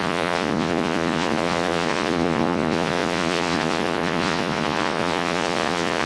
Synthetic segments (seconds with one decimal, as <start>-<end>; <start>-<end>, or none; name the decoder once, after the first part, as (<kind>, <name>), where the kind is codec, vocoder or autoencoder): 0.0-6.1 (vocoder, Vocos)